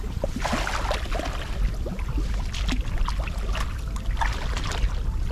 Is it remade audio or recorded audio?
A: recorded